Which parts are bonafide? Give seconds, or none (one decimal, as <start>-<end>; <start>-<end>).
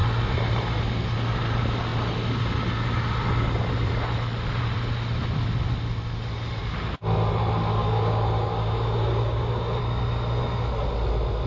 0.0-7.7; 9.5-11.5